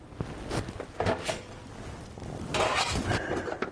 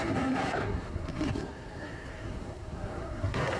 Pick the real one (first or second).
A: first